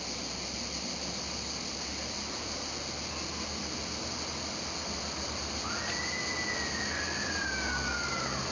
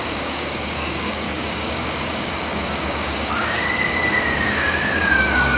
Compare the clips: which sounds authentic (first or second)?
first